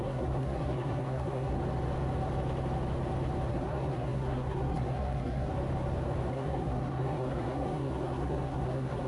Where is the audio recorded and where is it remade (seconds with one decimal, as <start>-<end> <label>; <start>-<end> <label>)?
0.0-1.6 remade; 1.6-3.5 recorded; 3.5-5.5 remade; 5.5-6.3 recorded; 6.3-9.1 remade

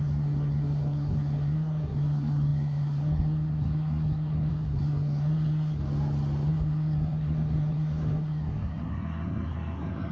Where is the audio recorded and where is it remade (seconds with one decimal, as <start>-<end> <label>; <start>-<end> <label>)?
0.0-5.8 remade; 5.8-6.5 recorded; 6.5-10.1 remade

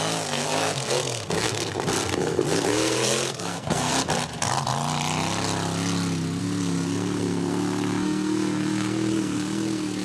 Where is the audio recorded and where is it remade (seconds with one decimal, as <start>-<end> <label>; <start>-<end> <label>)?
0.0-3.9 remade; 3.9-6.4 recorded; 6.4-10.0 remade

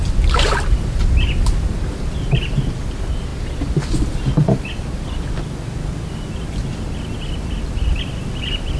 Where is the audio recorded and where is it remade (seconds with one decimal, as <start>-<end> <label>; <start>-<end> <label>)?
0.0-8.8 recorded

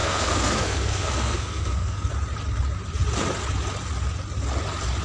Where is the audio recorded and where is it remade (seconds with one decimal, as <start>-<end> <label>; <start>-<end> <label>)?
0.0-2.1 remade; 2.1-5.0 recorded